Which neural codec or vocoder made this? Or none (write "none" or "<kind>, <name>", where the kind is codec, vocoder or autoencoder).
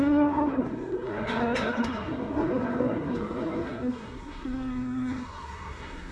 codec, SNAC